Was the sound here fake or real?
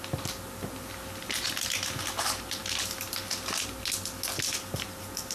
real